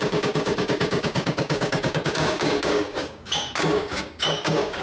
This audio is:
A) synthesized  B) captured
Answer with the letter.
A